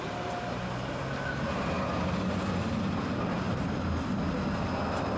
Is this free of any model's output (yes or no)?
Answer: yes